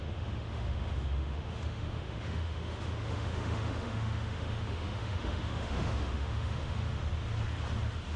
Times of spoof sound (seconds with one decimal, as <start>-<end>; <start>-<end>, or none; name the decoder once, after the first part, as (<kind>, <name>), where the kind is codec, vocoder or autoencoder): 0.0-7.0 (autoencoder, DAC-VAE)